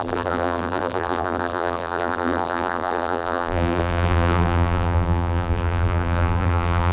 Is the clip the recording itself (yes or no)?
no